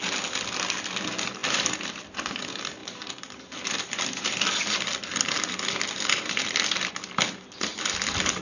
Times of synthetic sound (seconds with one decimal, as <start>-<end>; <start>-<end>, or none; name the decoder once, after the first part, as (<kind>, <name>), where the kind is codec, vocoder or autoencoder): 1.4-2.4 (vocoder, BigVGAN v2); 2.8-6.9; 7.7-8.4